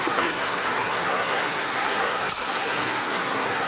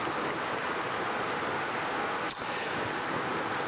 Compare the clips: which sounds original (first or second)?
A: second